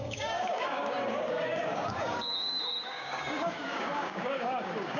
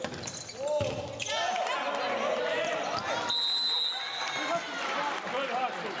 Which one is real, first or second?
second